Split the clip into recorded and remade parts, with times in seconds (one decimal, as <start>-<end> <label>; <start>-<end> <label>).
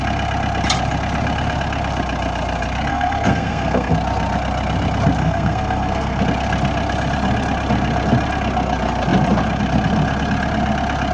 0.0-2.9 recorded; 2.9-3.9 remade; 3.9-5.2 recorded; 5.2-6.2 remade; 6.2-11.1 recorded